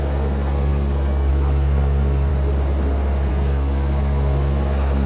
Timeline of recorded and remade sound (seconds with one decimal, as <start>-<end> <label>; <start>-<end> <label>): 0.0-2.3 remade; 2.3-3.3 recorded; 3.3-5.1 remade